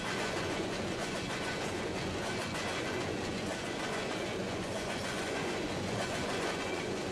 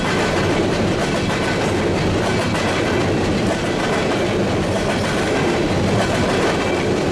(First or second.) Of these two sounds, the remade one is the first